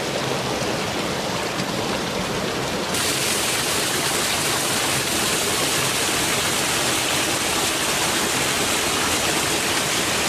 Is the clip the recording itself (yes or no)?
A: yes